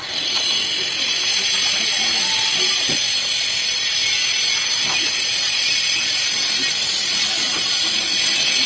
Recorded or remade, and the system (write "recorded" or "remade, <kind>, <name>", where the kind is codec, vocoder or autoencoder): recorded